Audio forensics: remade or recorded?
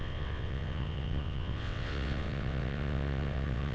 remade